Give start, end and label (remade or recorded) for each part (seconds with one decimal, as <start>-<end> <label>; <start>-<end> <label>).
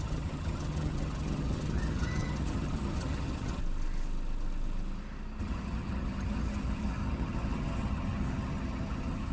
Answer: 0.0-3.6 remade; 3.6-5.4 recorded; 5.4-9.3 remade